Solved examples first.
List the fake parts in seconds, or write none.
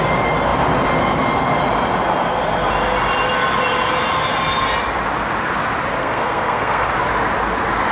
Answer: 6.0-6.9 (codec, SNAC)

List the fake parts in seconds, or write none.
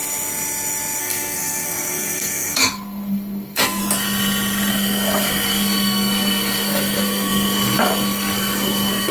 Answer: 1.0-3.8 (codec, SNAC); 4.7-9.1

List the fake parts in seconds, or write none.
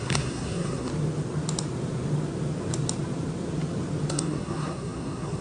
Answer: 0.0-0.9 (codec, SNAC); 4.1-5.4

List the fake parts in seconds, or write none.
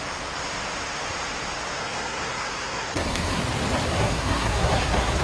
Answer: 1.8-3.4 (codec, SNAC); 3.9-5.2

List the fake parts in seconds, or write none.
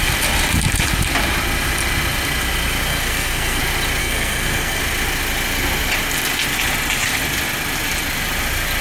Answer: 2.9-3.6 (codec, SNAC); 4.0-4.8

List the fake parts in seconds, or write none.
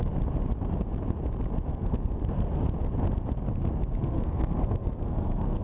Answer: 1.7-2.2 (codec, SNAC); 4.0-5.6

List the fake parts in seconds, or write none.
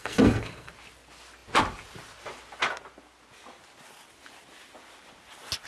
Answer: 0.0-0.7 (codec, SNAC)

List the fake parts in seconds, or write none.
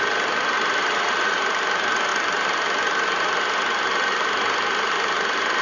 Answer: none